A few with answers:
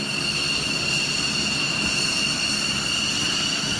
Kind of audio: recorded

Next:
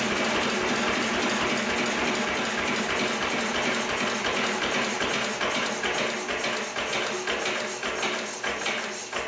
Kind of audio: recorded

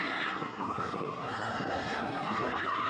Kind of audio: remade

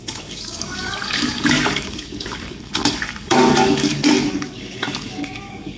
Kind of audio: remade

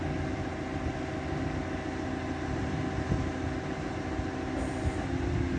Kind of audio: recorded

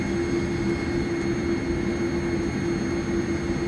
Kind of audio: recorded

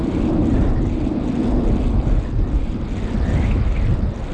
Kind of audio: recorded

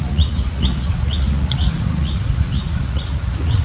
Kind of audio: remade